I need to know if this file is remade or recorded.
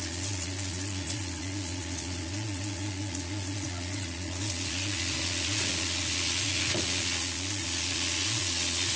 remade